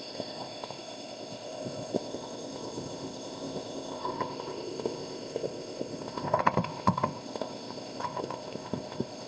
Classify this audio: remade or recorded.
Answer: remade